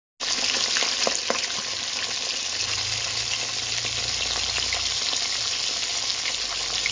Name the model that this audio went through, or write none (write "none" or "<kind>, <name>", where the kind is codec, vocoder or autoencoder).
none